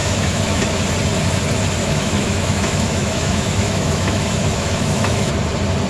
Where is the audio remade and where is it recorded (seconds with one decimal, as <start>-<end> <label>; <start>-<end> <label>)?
0.0-0.8 remade; 0.8-1.8 recorded; 1.8-5.3 remade; 5.3-5.9 recorded